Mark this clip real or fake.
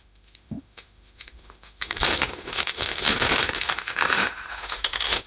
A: fake